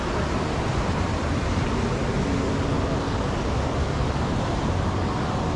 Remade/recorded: recorded